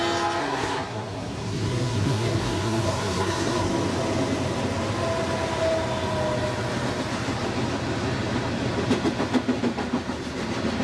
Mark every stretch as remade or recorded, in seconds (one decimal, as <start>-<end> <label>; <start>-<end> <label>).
0.0-0.4 recorded; 0.4-3.7 remade; 3.7-10.8 recorded